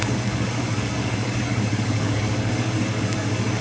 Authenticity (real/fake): fake